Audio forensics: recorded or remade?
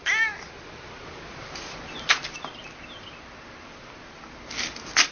recorded